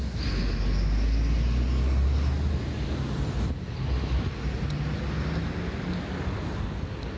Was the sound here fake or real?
real